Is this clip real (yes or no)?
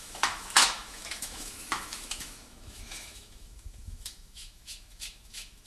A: no